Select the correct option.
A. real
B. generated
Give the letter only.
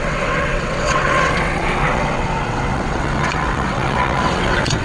B